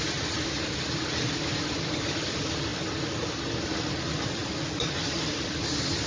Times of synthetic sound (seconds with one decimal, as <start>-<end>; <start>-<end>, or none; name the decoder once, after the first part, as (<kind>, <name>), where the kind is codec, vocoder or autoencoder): none